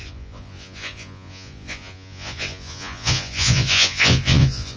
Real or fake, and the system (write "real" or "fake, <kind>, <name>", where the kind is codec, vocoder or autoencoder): fake, vocoder, Vocos